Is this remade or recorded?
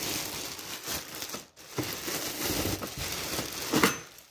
recorded